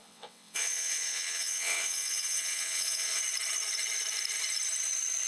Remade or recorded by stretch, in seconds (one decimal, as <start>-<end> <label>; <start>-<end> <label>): 0.0-3.2 remade; 3.2-5.3 recorded